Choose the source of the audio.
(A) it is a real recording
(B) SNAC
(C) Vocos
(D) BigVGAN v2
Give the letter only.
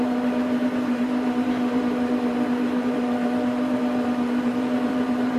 D